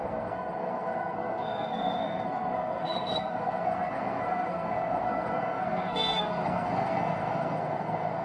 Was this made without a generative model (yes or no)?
no